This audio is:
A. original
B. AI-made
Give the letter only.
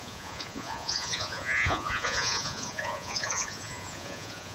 B